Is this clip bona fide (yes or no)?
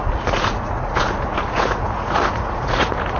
no